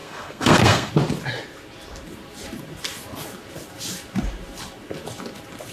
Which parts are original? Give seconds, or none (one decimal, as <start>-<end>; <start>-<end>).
0.9-5.7